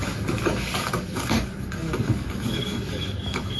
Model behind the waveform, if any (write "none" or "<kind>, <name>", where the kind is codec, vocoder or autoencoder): codec, DAC